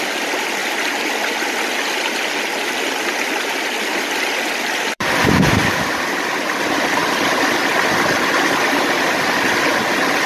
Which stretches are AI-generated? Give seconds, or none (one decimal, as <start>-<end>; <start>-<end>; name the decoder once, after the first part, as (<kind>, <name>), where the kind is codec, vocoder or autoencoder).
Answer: 3.9-6.4 (vocoder, BigVGAN v2)

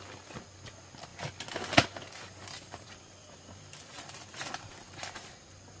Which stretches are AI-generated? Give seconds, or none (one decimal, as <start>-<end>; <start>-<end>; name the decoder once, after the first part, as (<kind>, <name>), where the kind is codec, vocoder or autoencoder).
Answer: 0.0-5.8 (vocoder, BigVGAN v2)

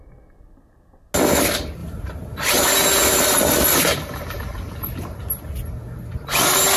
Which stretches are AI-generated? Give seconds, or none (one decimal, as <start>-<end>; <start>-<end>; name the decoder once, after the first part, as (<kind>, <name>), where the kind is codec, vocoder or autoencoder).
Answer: 1.8-2.6 (vocoder, BigVGAN v2)

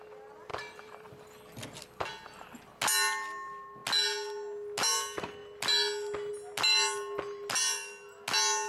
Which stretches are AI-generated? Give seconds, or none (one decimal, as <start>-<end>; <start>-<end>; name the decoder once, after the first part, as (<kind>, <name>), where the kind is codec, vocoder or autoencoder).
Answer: 0.5-1.2 (vocoder, BigVGAN v2)